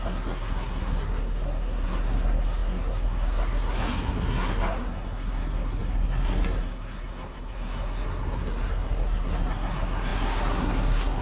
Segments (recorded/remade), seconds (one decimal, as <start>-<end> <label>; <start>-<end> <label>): 0.0-11.2 remade